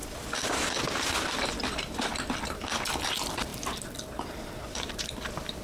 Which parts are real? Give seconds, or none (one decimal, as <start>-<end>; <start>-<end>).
none